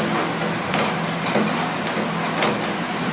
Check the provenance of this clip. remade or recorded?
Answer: recorded